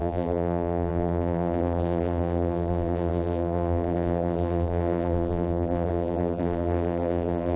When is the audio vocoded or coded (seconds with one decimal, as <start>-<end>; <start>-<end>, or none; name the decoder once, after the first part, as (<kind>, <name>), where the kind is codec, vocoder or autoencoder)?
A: 0.0-7.6 (vocoder, BigVGAN v2)